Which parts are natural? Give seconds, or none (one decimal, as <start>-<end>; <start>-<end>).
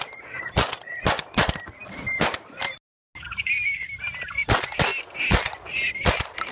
0.0-6.5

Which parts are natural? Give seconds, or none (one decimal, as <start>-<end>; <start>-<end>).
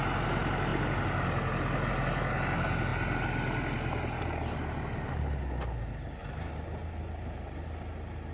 0.0-6.2; 7.7-8.3